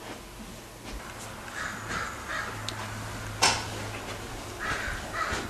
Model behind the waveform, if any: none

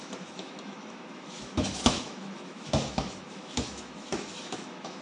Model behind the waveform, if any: autoencoder, DAC-VAE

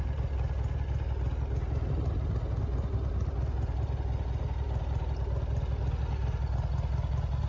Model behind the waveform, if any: none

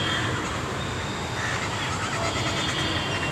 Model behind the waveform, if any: none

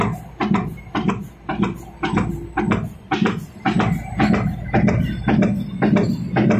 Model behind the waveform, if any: none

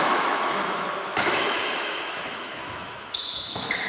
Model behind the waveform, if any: autoencoder, DAC-VAE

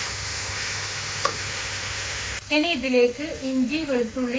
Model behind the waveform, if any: autoencoder, DAC-VAE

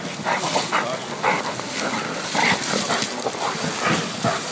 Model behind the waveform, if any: none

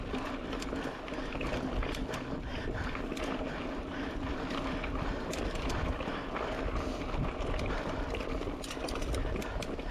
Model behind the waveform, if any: none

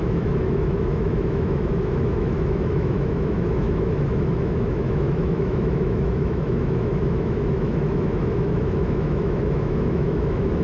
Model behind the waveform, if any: autoencoder, DAC-VAE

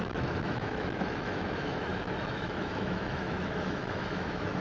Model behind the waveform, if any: autoencoder, DAC-VAE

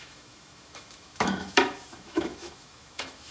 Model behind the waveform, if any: autoencoder, DAC-VAE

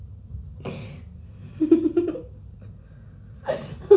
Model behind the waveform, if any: none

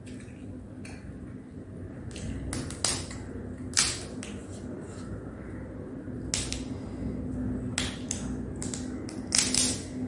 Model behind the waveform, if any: none